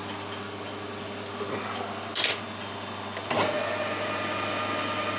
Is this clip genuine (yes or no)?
yes